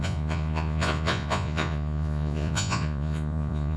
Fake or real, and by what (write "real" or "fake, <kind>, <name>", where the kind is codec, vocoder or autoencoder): fake, vocoder, Vocos